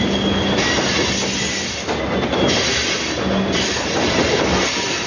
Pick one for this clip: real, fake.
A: real